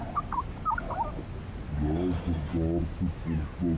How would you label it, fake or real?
real